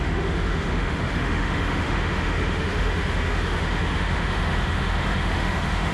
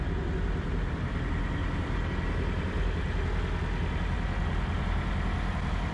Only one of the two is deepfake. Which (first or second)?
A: first